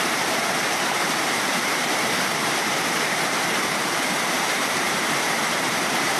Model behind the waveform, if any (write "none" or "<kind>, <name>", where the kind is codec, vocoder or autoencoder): vocoder, BigVGAN v2